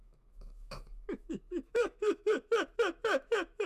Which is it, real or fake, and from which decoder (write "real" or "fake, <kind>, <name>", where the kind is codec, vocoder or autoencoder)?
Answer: fake, autoencoder, DAC-VAE